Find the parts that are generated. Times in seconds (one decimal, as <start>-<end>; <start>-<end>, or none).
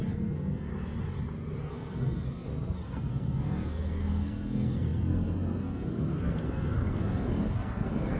0.0-0.7; 1.6-8.2